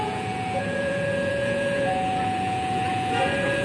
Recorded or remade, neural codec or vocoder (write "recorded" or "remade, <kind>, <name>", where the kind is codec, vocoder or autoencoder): remade, vocoder, Vocos